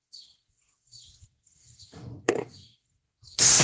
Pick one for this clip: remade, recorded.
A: remade